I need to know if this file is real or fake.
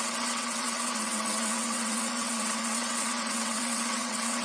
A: fake